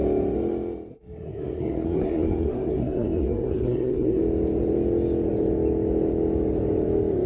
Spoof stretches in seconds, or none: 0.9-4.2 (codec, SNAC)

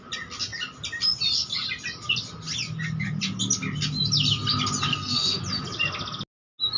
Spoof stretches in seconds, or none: 4.9-5.4 (codec, SNAC)